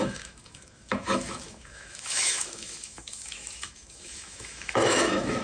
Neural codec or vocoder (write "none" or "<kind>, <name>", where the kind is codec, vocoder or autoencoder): autoencoder, DAC-VAE